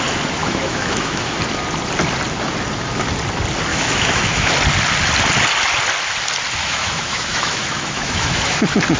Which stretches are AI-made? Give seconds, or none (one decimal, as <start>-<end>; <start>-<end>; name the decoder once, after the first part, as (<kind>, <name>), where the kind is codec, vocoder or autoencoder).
0.4-1.4 (autoencoder, DAC-VAE); 3.7-4.5; 6.6-8.6